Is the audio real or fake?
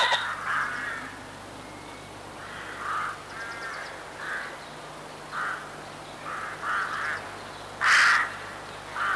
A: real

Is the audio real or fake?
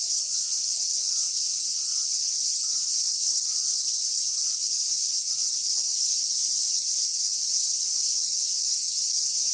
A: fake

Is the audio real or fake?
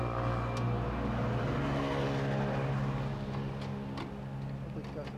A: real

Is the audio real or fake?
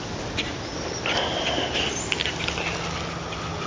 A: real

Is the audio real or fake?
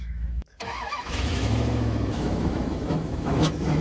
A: fake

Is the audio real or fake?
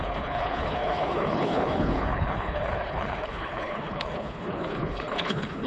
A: fake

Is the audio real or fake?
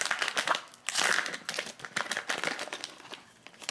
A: fake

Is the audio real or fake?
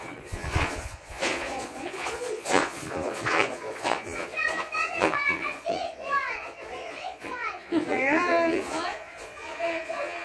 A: fake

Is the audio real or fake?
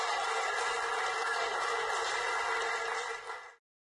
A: real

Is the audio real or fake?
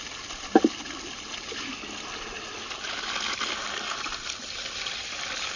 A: real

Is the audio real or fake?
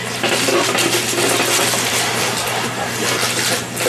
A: real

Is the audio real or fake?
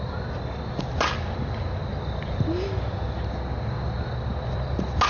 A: real